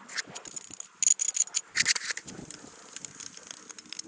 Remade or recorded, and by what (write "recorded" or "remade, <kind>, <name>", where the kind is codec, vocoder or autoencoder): recorded